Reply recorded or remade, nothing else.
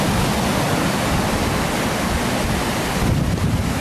recorded